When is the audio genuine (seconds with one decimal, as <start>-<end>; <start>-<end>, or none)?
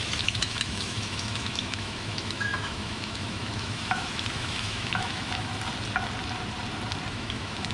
5.5-7.1